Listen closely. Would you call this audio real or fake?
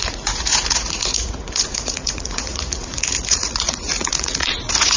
fake